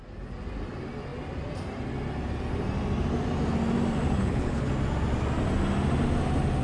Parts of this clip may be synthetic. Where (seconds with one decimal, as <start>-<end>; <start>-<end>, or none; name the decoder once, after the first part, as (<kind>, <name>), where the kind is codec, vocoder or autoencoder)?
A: 4.2-4.7 (codec, HILCodec)

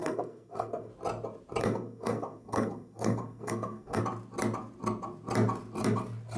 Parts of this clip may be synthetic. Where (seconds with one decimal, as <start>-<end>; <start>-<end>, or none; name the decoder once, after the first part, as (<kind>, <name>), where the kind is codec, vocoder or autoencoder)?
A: 0.0-0.9 (codec, SNAC); 1.6-4.0

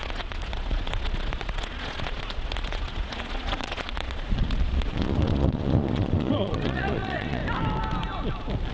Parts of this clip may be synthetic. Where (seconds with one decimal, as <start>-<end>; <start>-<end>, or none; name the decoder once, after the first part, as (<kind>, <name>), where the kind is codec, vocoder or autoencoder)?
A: 0.0-7.4 (vocoder, Vocos)

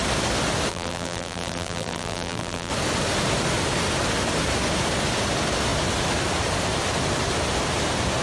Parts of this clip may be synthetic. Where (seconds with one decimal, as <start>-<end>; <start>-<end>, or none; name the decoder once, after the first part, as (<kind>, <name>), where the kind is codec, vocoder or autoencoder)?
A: 0.7-2.7 (vocoder, BigVGAN v2)